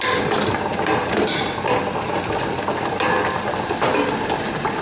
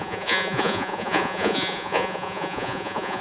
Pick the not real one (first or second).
second